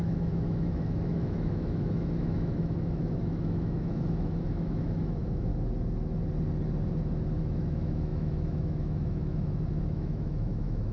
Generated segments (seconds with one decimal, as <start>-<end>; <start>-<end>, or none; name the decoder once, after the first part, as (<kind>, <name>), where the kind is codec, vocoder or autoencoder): 0.0-5.5 (autoencoder, DAC-VAE); 7.4-10.9